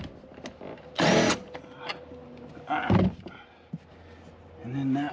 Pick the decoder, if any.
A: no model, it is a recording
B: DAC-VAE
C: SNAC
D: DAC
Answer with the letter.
A